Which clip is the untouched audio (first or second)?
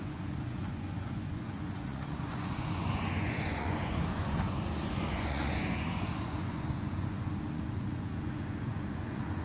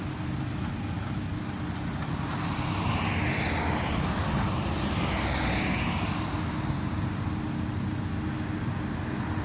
second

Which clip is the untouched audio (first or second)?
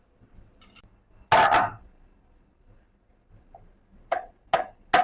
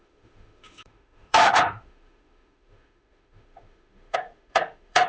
first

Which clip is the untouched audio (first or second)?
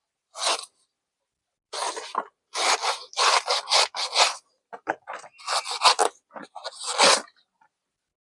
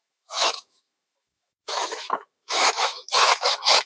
first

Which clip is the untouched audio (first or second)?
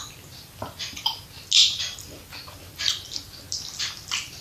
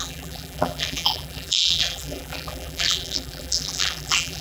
first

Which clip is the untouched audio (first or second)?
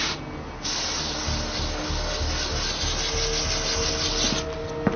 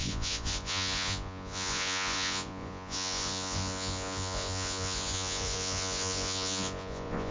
first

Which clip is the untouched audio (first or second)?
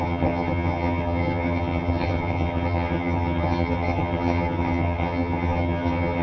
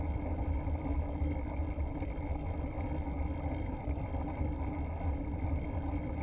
second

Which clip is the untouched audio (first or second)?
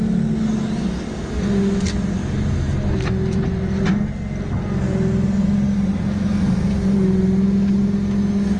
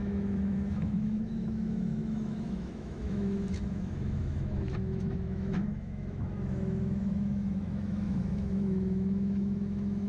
first